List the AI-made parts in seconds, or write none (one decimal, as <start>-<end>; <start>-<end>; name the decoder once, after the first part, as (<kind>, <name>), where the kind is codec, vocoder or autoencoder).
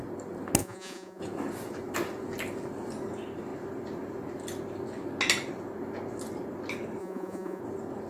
0.6-1.2 (vocoder, Vocos); 7.0-7.6